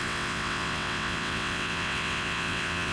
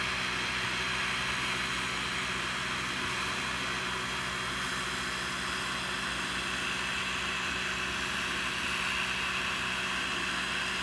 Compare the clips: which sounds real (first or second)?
second